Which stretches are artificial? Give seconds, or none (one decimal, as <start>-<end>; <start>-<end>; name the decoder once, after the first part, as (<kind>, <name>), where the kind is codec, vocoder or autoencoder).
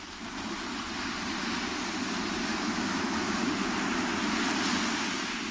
2.5-3.7 (autoencoder, DAC-VAE)